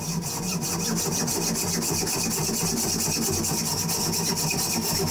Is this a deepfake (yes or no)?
no